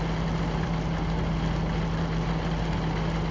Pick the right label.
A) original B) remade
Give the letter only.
A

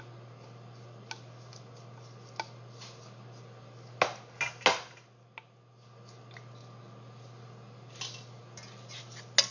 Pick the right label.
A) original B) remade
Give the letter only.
A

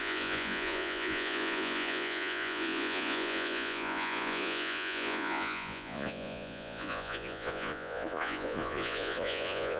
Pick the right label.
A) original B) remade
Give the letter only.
B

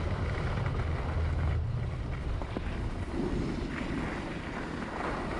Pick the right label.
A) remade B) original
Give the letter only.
B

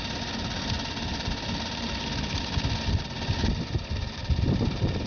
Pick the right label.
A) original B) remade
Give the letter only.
A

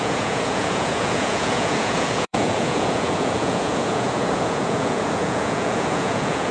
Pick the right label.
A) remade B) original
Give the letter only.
A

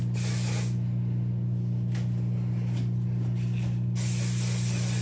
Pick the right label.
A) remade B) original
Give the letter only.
B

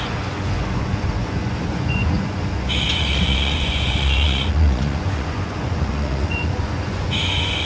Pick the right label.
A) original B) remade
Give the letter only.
B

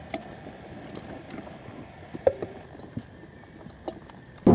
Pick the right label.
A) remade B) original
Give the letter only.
B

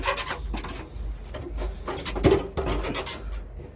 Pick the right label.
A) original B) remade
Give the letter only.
A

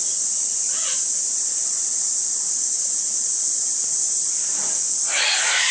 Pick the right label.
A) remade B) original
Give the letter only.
A